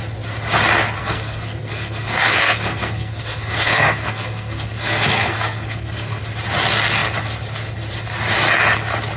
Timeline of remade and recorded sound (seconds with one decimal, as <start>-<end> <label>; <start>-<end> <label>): 0.0-1.0 recorded; 1.0-6.2 remade; 6.2-9.2 recorded